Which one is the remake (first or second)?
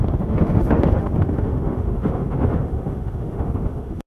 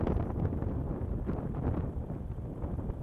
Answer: first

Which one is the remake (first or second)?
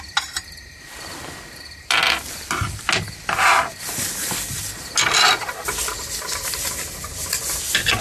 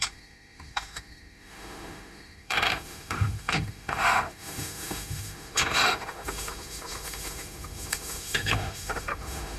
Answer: second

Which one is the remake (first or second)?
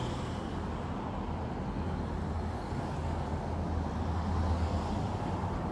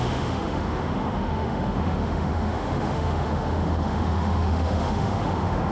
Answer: second